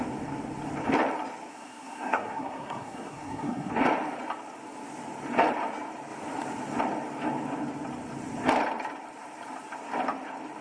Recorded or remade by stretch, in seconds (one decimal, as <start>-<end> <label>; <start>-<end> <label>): 0.0-1.5 recorded; 1.5-3.7 remade; 3.7-10.6 recorded